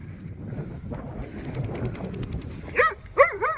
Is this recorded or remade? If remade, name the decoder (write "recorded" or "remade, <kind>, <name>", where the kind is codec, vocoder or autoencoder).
recorded